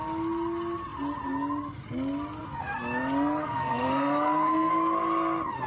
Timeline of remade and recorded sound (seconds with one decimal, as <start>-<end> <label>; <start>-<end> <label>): 0.0-3.4 recorded; 3.4-4.7 remade; 4.7-5.7 recorded

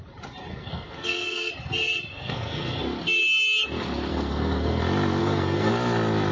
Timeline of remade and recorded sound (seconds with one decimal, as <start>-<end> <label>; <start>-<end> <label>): 0.0-0.5 recorded; 0.5-1.5 remade; 1.5-2.1 recorded; 2.1-2.8 remade; 2.8-4.1 recorded; 4.1-4.8 remade; 4.8-5.2 recorded; 5.2-5.7 remade; 5.7-6.3 recorded

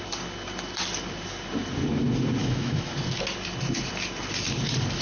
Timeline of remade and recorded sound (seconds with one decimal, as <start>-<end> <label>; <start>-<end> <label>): 0.0-2.4 recorded; 2.4-2.9 remade; 2.9-5.0 recorded

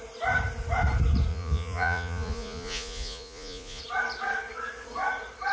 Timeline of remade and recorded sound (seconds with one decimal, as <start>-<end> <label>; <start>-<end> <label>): 0.0-1.3 recorded; 1.3-3.8 remade; 3.8-5.5 recorded